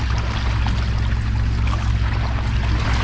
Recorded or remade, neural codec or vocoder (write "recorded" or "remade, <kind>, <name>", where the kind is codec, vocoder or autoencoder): recorded